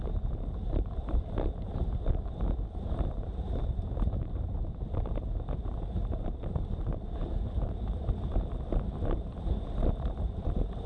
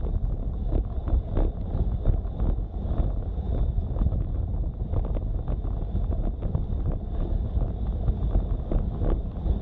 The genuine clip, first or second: second